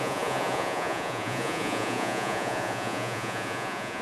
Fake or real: fake